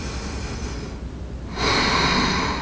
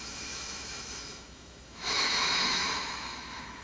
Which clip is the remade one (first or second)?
second